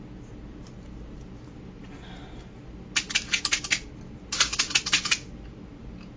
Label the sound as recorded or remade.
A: recorded